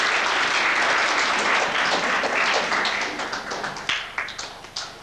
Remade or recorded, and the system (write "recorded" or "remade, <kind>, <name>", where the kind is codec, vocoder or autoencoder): recorded